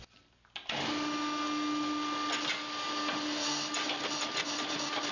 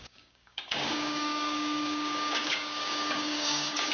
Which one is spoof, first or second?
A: second